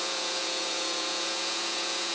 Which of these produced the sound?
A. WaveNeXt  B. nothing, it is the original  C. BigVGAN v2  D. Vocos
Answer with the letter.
D